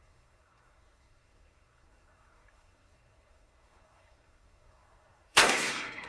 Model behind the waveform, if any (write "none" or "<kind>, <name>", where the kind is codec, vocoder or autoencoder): codec, SNAC